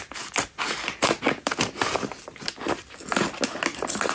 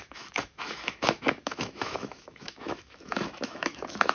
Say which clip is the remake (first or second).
second